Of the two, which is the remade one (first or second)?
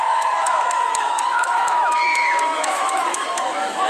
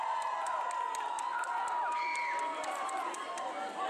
first